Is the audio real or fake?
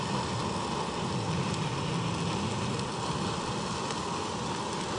real